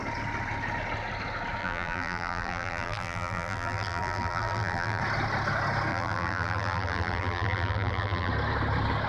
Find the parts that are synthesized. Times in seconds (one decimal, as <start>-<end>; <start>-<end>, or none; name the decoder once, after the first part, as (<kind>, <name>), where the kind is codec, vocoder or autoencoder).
1.6-5.0 (vocoder, BigVGAN v2); 5.9-8.3